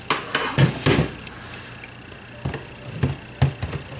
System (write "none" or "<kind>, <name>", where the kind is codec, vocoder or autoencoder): none